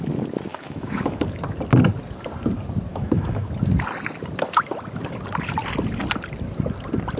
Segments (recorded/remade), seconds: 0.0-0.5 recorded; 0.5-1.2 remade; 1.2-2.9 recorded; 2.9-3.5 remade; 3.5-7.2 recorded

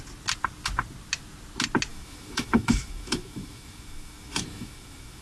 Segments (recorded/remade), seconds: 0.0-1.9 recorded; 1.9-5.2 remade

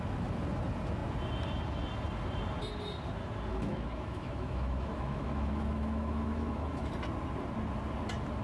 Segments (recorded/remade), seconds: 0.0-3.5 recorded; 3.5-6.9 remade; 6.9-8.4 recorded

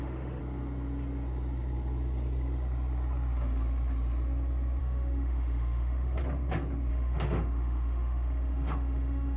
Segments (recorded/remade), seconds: 0.0-0.4 remade; 0.4-4.8 recorded; 4.8-6.2 remade; 6.2-6.9 recorded; 6.9-9.4 remade

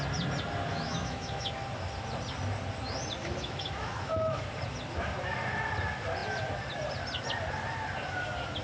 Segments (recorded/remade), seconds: 0.0-0.7 recorded; 0.7-1.5 remade; 1.5-3.2 recorded; 3.2-4.4 remade; 4.4-8.6 recorded

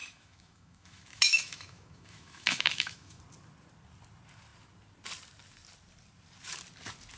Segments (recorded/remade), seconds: 0.0-3.2 remade; 3.2-7.2 recorded

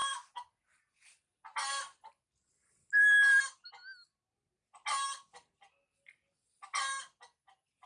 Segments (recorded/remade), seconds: 0.0-7.9 recorded